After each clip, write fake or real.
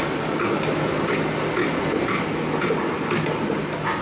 real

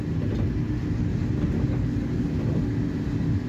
real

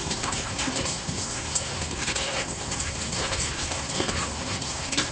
fake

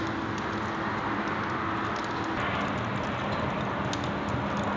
real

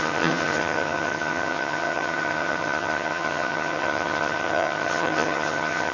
fake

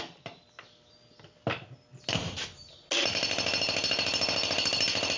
real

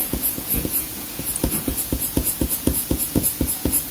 fake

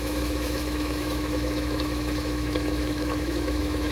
fake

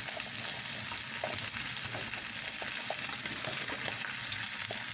real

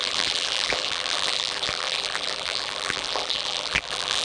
fake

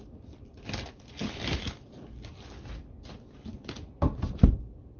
real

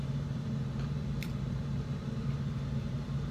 fake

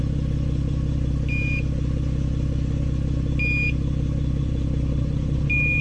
real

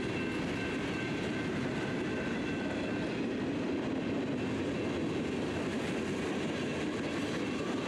real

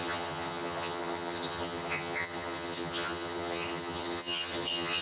fake